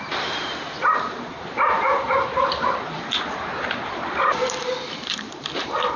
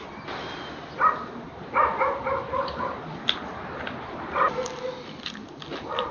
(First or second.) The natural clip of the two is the second